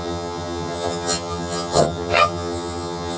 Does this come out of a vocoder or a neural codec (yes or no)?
yes